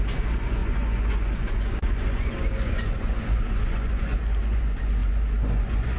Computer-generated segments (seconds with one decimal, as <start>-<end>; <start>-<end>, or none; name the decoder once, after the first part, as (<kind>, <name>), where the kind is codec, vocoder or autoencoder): 0.0-6.0 (vocoder, Vocos)